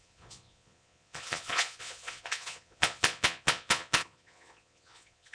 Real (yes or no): no